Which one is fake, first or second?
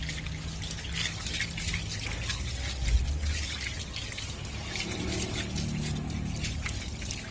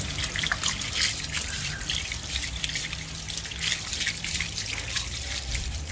second